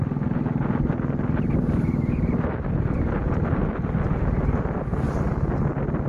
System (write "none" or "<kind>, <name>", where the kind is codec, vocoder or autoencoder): none